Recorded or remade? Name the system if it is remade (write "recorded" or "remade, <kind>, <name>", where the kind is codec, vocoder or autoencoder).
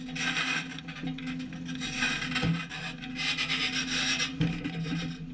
recorded